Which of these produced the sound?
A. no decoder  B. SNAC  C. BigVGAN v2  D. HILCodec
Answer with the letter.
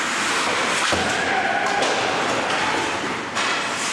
A